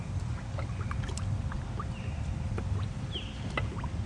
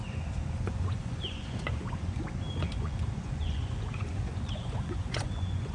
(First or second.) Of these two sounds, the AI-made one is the second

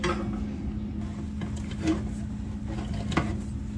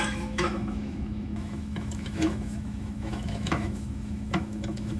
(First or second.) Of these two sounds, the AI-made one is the second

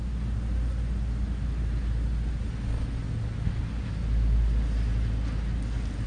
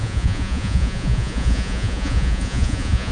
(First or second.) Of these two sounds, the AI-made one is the second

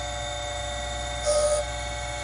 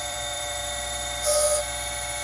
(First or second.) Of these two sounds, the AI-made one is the second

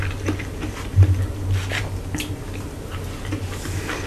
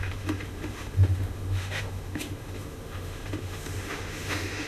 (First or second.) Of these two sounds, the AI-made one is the second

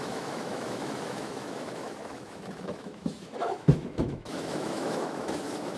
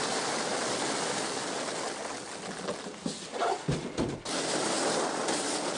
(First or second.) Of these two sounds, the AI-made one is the first